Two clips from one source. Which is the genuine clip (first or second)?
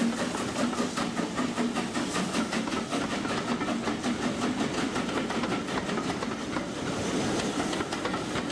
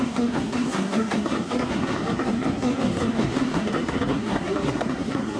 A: first